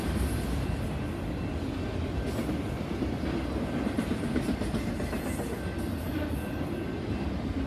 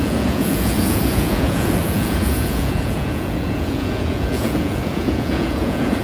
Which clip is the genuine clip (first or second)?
first